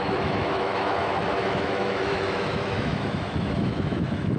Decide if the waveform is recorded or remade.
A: remade